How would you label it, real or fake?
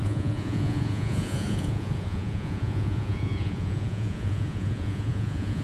fake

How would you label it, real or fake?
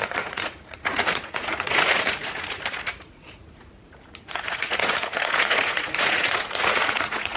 fake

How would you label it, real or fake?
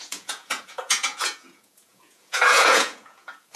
fake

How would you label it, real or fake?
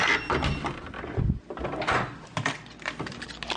real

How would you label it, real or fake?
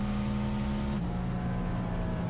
real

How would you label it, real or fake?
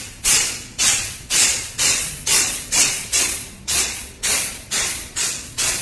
fake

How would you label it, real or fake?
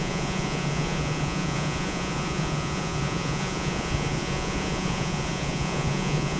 fake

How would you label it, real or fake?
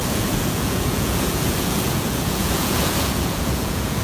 fake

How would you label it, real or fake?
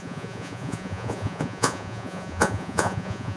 fake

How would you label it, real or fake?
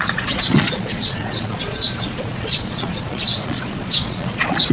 fake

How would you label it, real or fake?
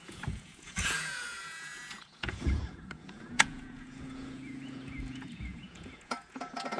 fake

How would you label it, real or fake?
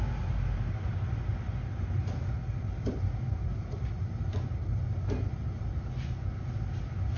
real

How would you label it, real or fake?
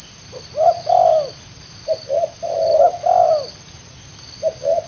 real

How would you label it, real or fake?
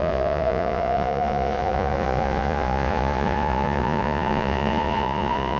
fake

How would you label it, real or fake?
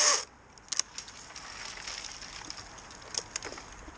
real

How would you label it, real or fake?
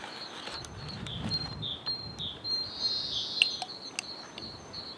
real